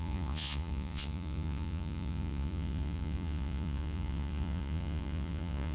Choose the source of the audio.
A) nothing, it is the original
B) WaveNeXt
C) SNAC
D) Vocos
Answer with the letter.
D